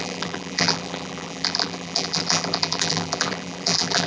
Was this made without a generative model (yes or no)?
no